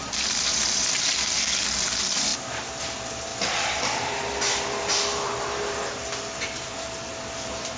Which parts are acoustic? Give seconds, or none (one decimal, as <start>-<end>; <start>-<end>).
1.6-3.3; 4.1-7.8